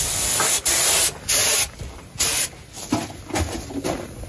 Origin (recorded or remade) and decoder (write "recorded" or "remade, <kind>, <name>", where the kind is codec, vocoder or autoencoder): recorded